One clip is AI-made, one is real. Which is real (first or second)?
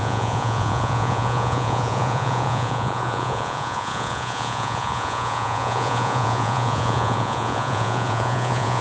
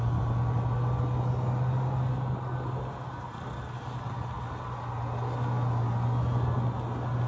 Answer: second